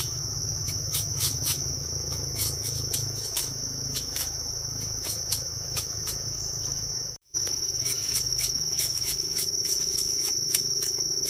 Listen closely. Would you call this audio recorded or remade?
remade